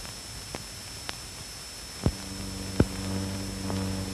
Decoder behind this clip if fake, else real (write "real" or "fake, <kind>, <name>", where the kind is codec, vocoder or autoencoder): real